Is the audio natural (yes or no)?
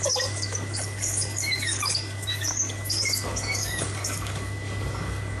no